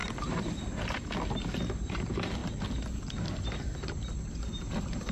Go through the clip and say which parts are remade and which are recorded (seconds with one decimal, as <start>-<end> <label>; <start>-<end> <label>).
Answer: 0.0-0.6 remade; 0.6-5.1 recorded